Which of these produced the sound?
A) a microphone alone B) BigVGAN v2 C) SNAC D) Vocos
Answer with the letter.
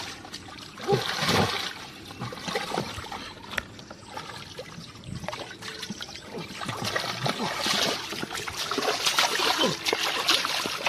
A